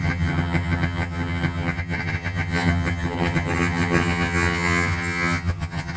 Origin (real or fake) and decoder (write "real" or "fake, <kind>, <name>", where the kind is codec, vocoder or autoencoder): fake, vocoder, HiFi-GAN